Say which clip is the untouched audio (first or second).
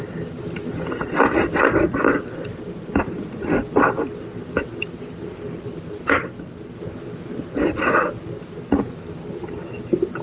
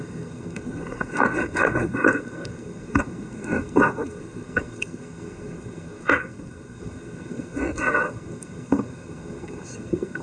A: first